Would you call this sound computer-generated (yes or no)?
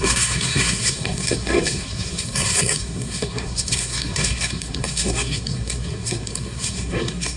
yes